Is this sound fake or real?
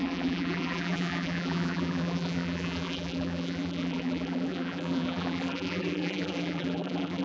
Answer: fake